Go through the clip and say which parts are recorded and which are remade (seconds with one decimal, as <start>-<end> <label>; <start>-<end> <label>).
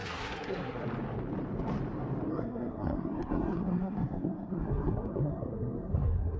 0.0-0.8 remade; 0.8-2.3 recorded; 2.3-6.4 remade